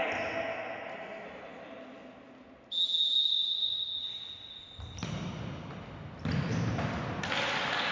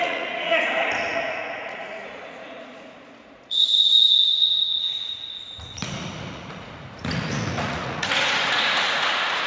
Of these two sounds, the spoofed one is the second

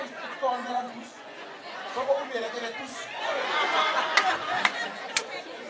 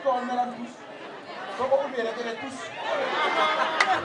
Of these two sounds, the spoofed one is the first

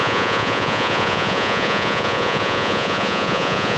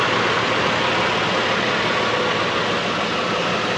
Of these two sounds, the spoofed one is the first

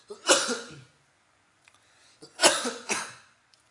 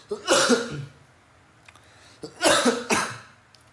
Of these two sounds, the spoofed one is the first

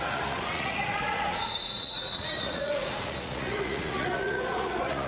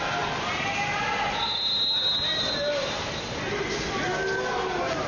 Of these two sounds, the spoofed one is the first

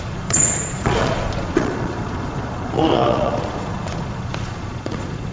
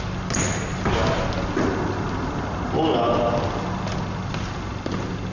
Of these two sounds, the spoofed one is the first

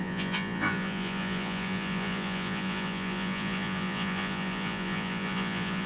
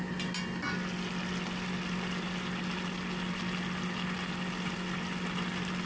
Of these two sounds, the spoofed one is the first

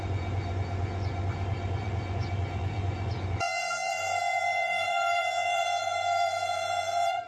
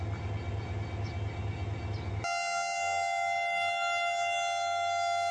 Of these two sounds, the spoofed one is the first